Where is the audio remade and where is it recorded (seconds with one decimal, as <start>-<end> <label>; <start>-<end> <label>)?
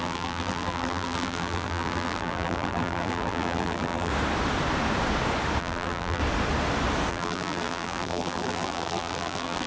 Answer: 0.0-4.1 remade; 4.1-5.6 recorded; 5.6-6.2 remade; 6.2-7.1 recorded; 7.1-9.7 remade